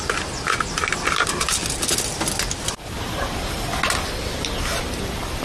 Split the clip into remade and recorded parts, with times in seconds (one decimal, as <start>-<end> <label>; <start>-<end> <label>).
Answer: 0.0-1.6 remade; 1.6-4.8 recorded; 4.8-5.4 remade